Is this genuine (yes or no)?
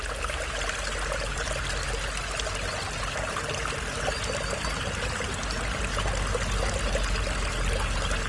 yes